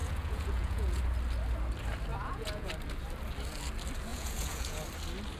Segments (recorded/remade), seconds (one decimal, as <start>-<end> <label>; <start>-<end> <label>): 0.0-1.0 remade; 1.0-2.1 recorded; 2.1-2.7 remade; 2.7-4.1 recorded; 4.1-4.8 remade; 4.8-5.4 recorded